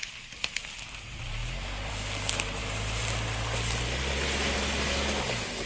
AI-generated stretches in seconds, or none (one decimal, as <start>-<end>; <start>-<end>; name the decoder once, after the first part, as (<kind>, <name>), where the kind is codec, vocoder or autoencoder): none